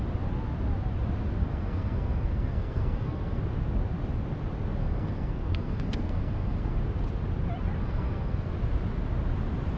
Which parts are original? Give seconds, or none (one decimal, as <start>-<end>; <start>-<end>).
0.0-1.4; 3.4-4.8; 6.8-7.8; 8.5-9.8